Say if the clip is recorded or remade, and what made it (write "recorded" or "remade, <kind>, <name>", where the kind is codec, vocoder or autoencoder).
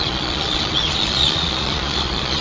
remade, vocoder, Vocos